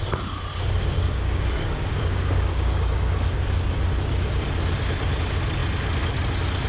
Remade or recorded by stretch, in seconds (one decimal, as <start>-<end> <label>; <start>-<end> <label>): 0.0-0.5 recorded; 0.5-3.8 remade; 3.8-6.7 recorded